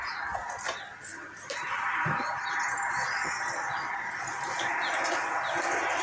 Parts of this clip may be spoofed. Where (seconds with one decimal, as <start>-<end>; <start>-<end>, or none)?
1.1-4.7

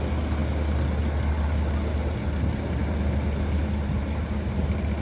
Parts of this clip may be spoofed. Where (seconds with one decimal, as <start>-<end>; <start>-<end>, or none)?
none

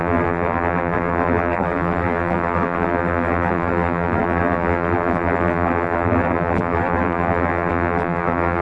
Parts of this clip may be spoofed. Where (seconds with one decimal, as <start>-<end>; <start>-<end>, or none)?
0.0-8.6

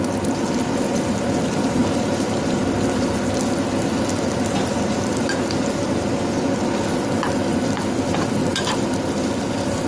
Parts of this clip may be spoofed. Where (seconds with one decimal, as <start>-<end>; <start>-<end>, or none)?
1.8-2.6; 8.4-8.9

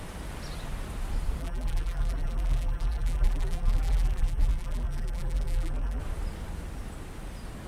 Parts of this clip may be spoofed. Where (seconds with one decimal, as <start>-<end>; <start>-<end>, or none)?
1.4-6.0

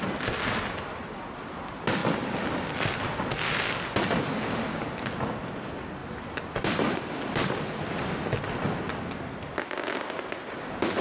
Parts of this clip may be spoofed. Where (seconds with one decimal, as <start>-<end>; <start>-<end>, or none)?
6.0-7.0

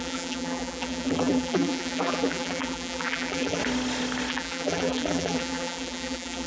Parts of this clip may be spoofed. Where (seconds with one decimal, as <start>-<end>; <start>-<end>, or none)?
0.0-3.6; 4.3-6.5